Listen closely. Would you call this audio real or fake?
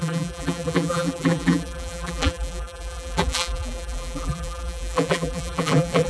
fake